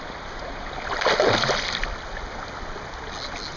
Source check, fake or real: real